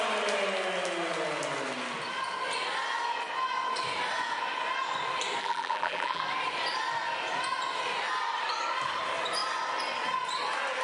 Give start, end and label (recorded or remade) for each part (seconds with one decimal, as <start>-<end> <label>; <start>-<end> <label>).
0.0-5.4 recorded; 5.4-6.2 remade; 6.2-10.8 recorded